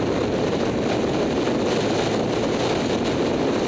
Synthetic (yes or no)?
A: no